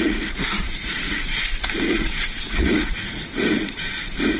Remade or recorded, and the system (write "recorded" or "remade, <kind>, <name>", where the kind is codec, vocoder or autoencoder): remade, vocoder, Vocos